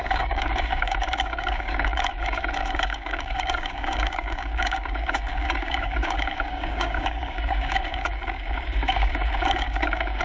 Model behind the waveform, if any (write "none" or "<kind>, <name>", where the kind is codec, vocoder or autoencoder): codec, DAC